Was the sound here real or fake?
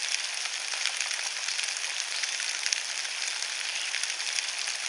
real